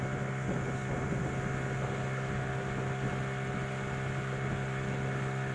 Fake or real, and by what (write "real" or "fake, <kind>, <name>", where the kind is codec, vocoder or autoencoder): real